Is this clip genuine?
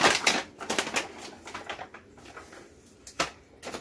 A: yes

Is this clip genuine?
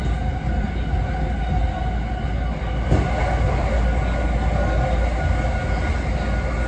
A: yes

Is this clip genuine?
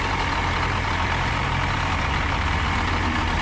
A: yes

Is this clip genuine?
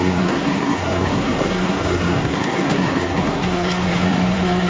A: no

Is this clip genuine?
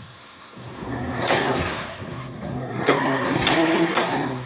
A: no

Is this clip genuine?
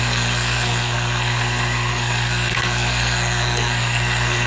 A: no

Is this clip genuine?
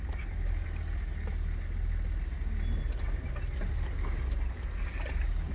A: yes